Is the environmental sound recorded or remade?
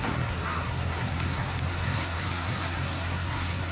remade